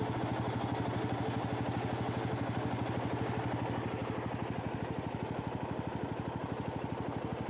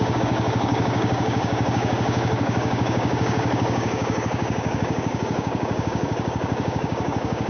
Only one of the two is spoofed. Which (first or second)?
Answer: second